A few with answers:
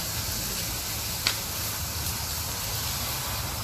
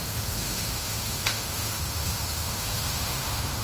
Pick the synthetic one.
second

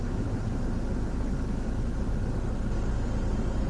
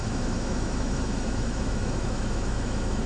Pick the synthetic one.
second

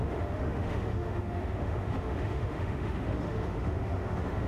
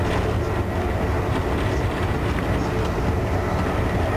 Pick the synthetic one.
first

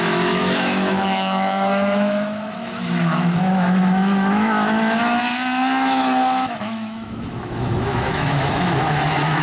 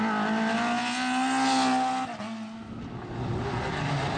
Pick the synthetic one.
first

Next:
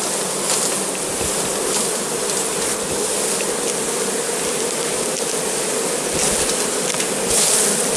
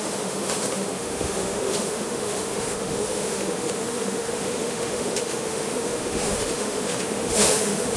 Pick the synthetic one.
second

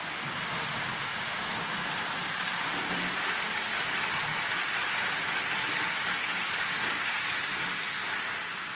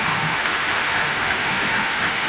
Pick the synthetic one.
second